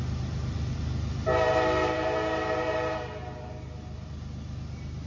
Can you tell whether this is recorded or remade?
recorded